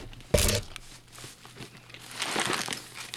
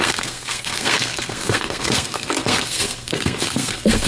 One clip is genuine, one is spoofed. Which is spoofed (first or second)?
second